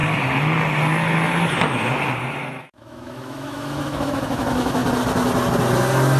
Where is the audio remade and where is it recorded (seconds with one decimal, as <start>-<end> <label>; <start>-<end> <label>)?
0.0-2.6 recorded; 2.6-4.8 remade; 4.8-6.2 recorded